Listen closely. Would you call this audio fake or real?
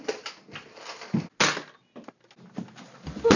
real